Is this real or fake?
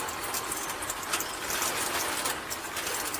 real